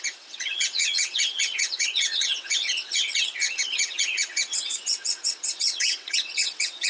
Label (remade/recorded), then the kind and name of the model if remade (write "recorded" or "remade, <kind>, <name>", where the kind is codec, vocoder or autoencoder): remade, vocoder, WaveNeXt